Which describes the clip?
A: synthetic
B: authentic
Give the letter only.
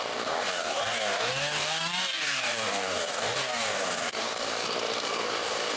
A